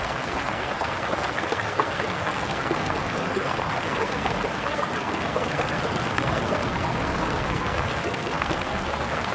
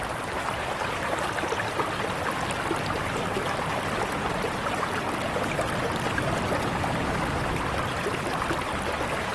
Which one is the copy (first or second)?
first